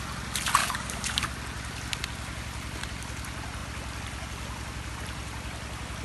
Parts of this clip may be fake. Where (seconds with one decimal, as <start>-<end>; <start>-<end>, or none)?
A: 0.6-1.3

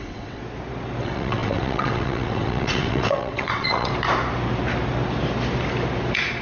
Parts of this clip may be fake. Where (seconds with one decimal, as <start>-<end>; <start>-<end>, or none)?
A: 0.0-0.4; 1.0-3.9

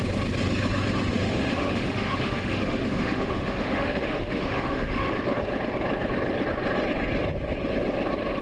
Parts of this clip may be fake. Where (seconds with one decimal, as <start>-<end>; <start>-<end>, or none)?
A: 1.1-5.1

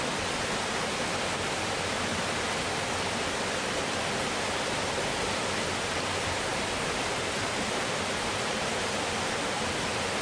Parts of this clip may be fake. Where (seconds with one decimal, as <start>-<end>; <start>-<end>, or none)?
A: none

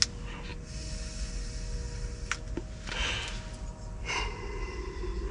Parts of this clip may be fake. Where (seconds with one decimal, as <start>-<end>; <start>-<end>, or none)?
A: none

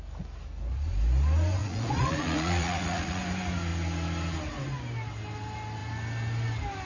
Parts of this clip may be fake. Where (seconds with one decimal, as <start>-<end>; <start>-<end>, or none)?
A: 1.6-3.2

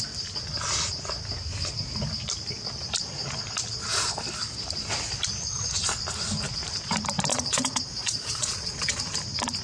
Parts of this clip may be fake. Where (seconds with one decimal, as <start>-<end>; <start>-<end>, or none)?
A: 7.3-9.0

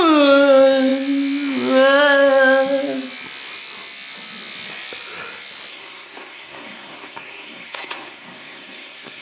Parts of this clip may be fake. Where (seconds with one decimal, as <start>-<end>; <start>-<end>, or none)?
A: 5.7-9.2